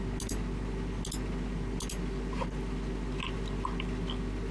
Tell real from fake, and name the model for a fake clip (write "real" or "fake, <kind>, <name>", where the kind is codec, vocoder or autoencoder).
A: real